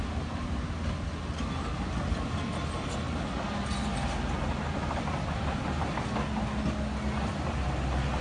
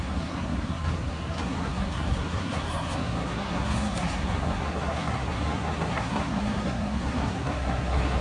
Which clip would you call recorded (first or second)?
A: first